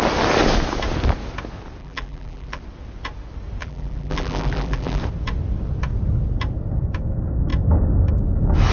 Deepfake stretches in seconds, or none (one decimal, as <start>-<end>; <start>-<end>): 1.8-2.6; 3.6-5.0